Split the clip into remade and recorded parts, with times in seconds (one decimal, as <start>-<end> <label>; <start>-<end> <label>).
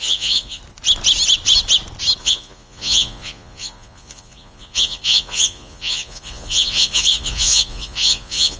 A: 0.0-0.6 remade; 0.6-2.2 recorded; 2.2-8.6 remade